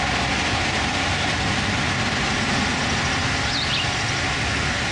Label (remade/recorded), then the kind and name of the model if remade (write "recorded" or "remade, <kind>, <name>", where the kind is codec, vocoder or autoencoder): recorded